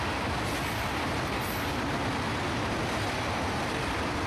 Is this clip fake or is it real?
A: real